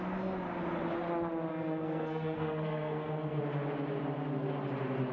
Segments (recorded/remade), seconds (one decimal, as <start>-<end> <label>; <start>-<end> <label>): 0.0-1.5 recorded; 1.5-3.4 remade; 3.4-5.1 recorded